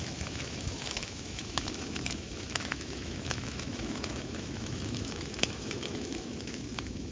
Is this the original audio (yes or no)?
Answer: no